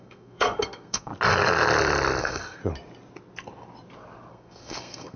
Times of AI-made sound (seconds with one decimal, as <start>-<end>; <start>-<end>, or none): 0.0-1.1; 2.2-2.6; 4.3-5.2